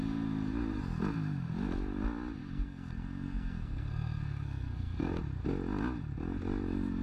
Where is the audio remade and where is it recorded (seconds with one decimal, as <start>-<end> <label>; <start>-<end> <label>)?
0.0-2.4 recorded; 2.4-5.1 remade; 5.1-7.0 recorded